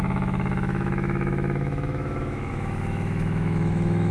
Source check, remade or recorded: remade